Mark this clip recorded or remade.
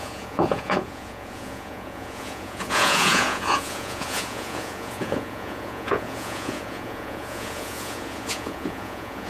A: remade